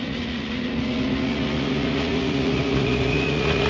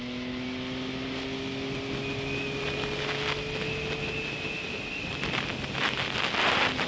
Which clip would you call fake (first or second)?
first